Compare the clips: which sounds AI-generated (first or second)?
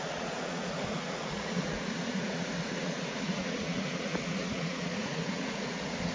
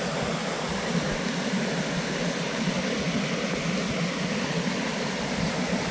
first